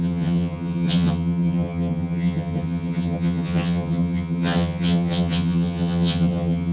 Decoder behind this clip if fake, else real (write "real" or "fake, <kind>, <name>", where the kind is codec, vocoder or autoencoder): fake, vocoder, HiFi-GAN